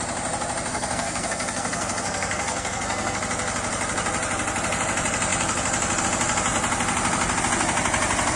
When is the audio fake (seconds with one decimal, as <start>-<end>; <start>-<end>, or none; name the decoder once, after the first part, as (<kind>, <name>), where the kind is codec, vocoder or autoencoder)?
0.7-3.2 (codec, SNAC)